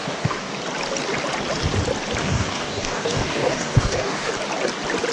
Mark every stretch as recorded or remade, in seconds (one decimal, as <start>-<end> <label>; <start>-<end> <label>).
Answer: 0.0-0.5 remade; 0.5-2.2 recorded; 2.2-4.3 remade; 4.3-5.1 recorded